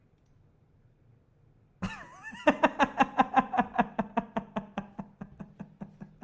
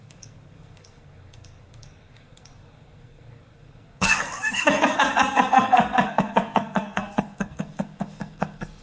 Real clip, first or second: first